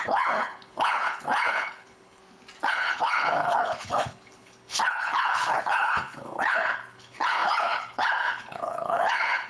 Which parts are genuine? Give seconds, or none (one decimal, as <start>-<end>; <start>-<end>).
2.2-2.7